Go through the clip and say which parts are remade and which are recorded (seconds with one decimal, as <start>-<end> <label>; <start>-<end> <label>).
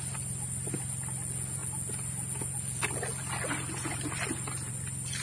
0.0-5.2 recorded